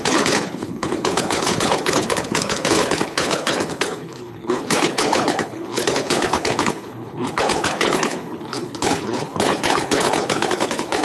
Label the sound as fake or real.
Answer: fake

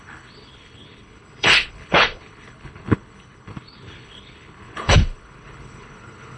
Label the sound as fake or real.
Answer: fake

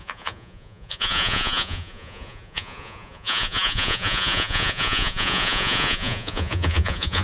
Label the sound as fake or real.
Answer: fake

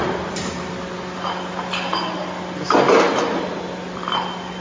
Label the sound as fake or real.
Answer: real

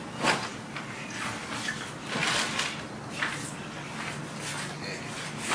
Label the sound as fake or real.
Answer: real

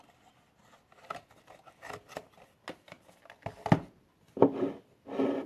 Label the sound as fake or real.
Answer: real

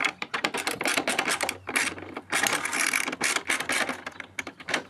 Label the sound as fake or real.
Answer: real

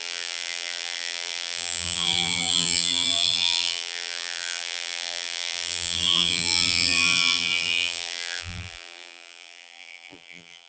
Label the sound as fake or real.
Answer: fake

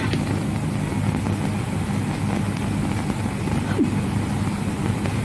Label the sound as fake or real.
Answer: real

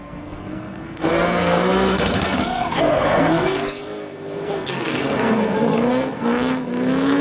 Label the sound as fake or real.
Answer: fake